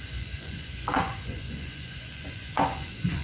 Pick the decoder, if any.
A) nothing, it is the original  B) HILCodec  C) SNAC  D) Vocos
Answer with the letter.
D